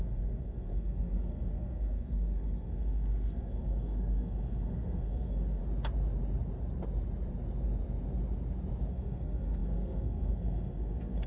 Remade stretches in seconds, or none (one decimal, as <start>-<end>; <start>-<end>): 0.0-5.6; 8.9-11.3